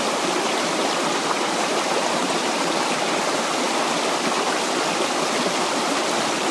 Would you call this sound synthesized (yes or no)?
no